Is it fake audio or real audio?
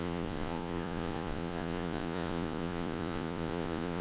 fake